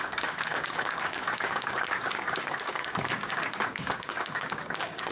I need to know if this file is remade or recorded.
remade